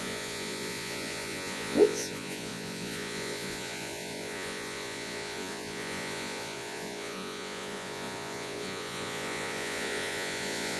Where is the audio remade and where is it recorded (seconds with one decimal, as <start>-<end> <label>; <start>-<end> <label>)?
0.0-10.8 remade